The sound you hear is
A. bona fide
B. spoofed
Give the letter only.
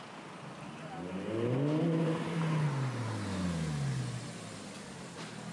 A